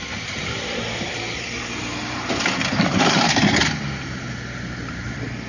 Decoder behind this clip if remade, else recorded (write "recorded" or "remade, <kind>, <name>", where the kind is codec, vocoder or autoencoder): recorded